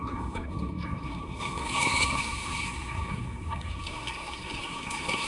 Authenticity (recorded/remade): remade